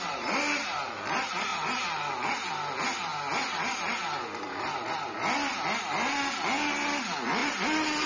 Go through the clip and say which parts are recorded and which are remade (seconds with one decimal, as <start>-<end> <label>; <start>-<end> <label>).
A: 0.0-8.1 recorded